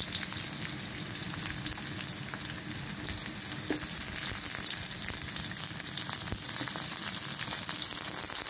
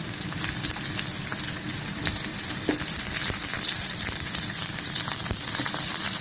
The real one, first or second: first